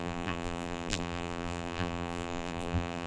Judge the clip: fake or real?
fake